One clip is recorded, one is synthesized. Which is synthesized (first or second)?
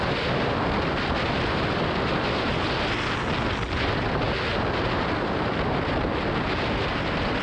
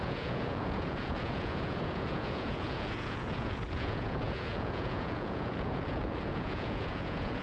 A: second